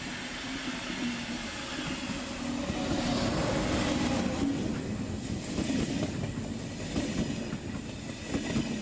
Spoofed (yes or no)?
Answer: no